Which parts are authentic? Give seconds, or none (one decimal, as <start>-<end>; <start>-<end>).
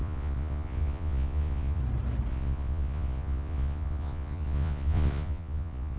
1.8-2.3